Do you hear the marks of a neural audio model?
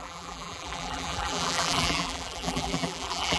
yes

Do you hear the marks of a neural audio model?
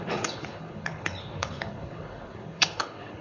yes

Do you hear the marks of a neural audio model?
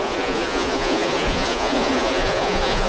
yes